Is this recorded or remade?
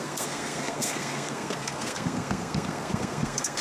remade